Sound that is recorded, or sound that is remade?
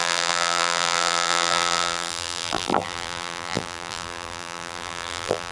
remade